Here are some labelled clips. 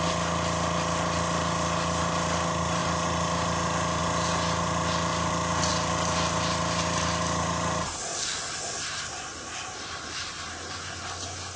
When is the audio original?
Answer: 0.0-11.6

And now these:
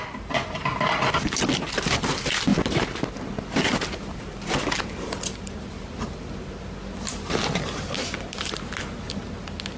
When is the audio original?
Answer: 0.0-9.8

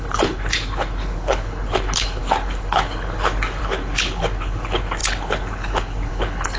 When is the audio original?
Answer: none

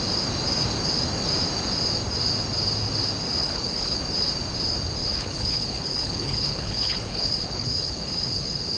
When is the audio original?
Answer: 0.0-3.4; 4.0-5.0

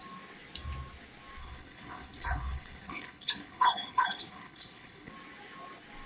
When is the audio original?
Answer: 0.0-1.4; 5.1-6.1

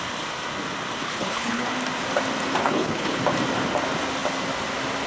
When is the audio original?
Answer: 0.0-1.0; 1.6-2.6; 3.2-5.1